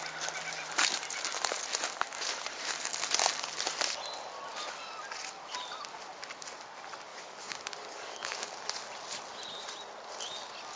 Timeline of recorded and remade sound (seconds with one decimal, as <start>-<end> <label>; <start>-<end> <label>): 0.0-7.1 recorded; 7.1-8.5 remade; 8.5-10.8 recorded